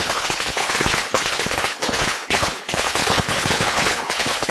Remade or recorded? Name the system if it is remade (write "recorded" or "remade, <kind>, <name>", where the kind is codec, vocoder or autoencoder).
remade, codec, HILCodec